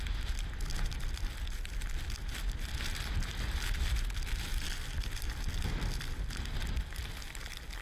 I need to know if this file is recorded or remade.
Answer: recorded